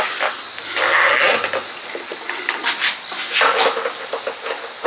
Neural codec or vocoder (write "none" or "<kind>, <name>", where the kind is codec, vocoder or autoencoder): none